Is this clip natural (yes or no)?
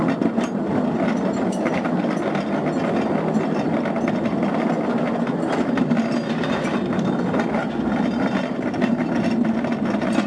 yes